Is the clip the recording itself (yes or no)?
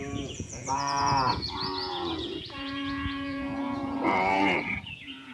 no